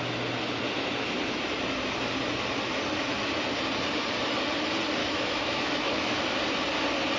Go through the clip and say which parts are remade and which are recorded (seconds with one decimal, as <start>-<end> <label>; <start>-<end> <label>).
0.0-5.0 recorded; 5.0-6.2 remade; 6.2-7.2 recorded